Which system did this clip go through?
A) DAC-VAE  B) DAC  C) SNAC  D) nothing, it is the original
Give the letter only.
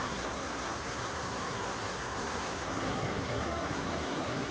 C